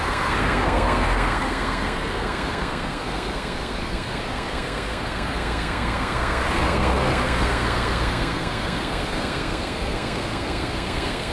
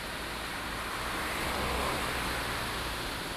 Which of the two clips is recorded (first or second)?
second